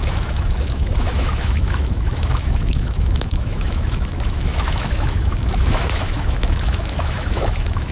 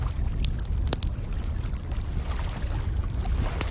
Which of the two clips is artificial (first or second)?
first